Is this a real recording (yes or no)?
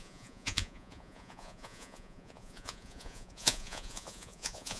no